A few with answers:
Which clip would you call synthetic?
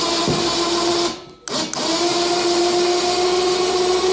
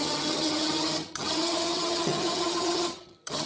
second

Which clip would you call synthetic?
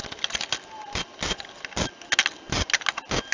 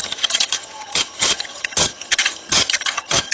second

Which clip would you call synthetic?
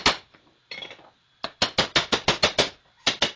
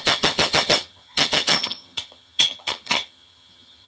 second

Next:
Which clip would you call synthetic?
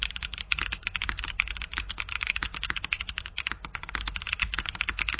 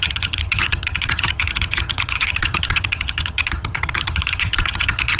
second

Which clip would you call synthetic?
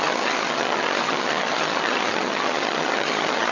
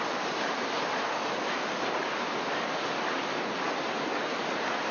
first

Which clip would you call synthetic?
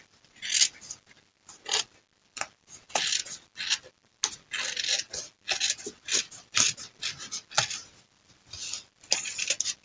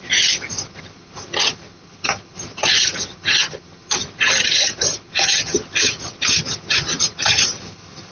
second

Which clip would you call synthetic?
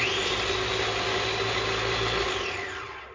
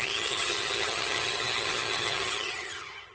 second